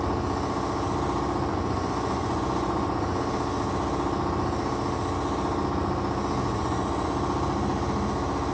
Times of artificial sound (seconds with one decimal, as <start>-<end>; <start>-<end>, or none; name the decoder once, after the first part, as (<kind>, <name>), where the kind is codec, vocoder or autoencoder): 1.5-3.2 (vocoder, Vocos); 6.4-7.1